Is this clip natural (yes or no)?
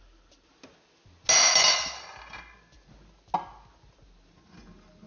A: yes